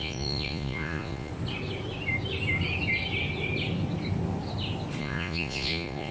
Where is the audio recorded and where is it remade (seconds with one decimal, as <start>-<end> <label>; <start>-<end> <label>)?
0.0-1.3 remade; 1.3-5.0 recorded; 5.0-6.1 remade